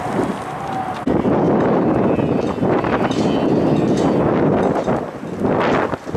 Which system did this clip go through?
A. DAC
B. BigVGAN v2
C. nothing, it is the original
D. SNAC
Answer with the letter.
C